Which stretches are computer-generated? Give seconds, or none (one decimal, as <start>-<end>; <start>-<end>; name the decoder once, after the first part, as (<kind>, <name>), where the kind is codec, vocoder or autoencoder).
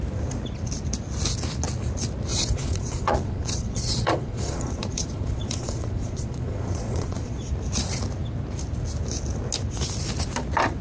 2.3-7.5 (vocoder, Vocos)